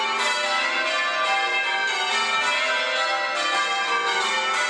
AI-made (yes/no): no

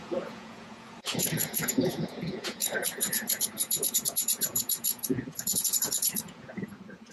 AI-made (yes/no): yes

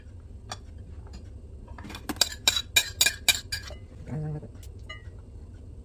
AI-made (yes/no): no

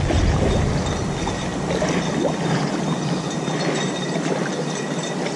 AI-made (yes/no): no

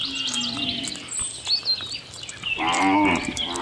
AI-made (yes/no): no